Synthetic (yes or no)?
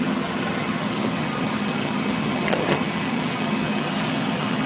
yes